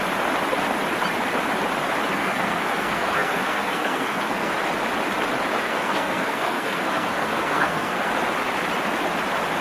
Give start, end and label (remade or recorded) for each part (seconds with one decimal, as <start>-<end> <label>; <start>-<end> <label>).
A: 0.0-2.1 recorded; 2.1-4.5 remade; 4.5-5.5 recorded; 5.5-8.1 remade; 8.1-9.6 recorded